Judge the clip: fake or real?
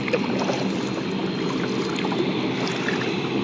real